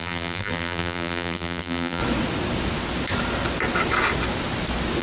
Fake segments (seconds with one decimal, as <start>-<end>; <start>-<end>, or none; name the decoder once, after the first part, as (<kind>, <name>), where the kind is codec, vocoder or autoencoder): 0.0-2.0 (vocoder, BigVGAN v2)